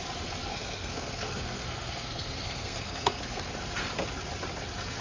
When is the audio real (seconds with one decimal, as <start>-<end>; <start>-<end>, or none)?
0.0-0.5; 3.5-5.0